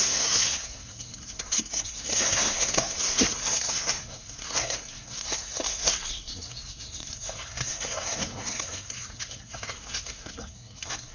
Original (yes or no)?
no